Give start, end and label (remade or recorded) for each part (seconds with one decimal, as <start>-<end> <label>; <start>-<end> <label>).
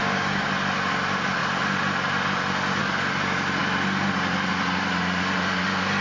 0.0-0.5 remade; 0.5-6.0 recorded